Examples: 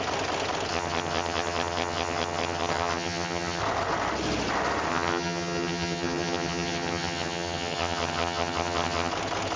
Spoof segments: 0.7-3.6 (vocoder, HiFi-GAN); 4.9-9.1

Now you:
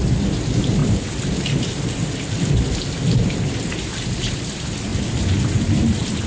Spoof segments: none

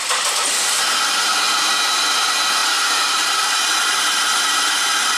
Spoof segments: 2.6-4.8 (vocoder, BigVGAN v2)

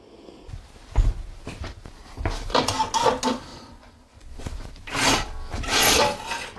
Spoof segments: 3.5-4.7 (vocoder, Vocos)

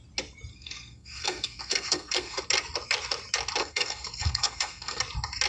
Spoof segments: 0.5-2.4 (codec, SNAC); 3.6-5.0